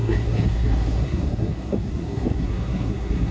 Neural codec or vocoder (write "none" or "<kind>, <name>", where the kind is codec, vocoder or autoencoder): codec, SNAC